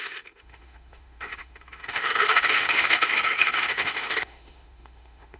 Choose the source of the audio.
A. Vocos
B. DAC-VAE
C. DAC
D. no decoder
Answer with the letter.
B